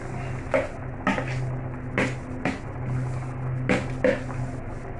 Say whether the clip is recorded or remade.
recorded